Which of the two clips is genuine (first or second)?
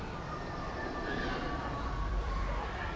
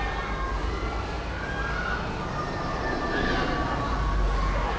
second